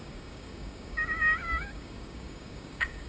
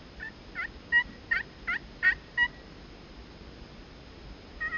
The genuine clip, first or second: second